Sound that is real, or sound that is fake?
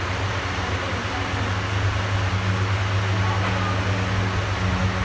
real